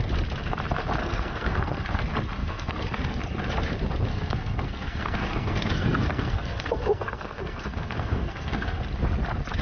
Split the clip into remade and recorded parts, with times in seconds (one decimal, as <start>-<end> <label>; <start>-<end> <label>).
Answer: 0.0-1.0 recorded; 1.0-2.0 remade; 2.0-2.4 recorded; 2.4-3.2 remade; 3.2-4.1 recorded; 4.1-8.8 remade; 8.8-9.6 recorded